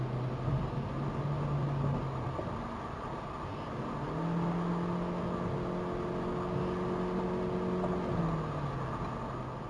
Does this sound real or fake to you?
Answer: real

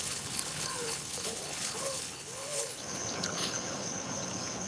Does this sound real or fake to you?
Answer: fake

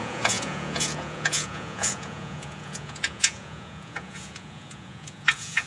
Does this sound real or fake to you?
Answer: fake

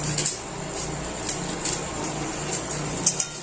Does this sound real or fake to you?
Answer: real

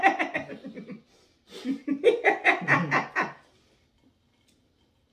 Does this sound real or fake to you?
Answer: real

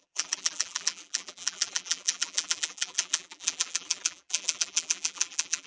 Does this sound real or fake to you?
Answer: fake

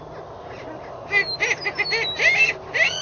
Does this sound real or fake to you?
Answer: real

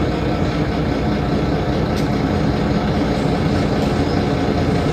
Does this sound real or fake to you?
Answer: real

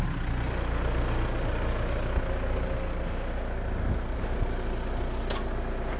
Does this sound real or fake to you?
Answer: real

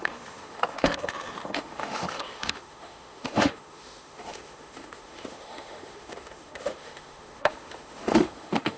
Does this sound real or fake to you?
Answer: fake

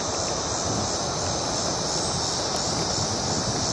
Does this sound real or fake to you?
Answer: real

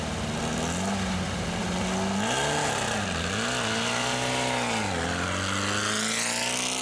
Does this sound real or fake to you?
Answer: real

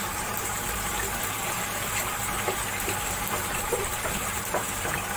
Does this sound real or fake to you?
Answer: fake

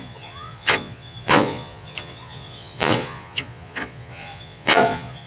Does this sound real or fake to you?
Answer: fake